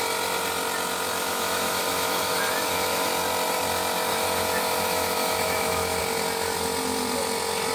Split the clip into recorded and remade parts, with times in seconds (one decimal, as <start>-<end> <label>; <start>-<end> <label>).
0.0-1.2 recorded; 1.2-3.1 remade; 3.1-4.1 recorded; 4.1-6.0 remade; 6.0-7.7 recorded